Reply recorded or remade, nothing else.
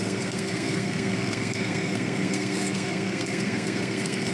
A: remade